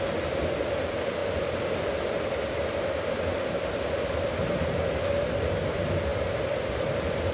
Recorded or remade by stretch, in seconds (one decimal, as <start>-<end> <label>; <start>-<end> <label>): 0.0-1.2 remade; 1.2-4.9 recorded; 4.9-6.1 remade; 6.1-6.7 recorded; 6.7-7.3 remade

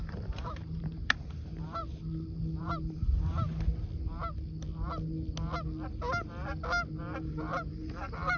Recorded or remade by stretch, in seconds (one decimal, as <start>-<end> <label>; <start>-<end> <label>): 0.0-1.8 remade; 1.8-2.6 recorded; 2.6-3.5 remade; 3.5-7.0 recorded; 7.0-8.4 remade